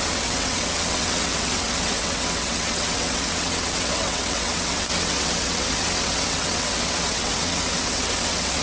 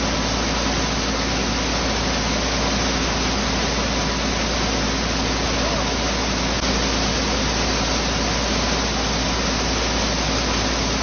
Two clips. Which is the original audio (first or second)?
second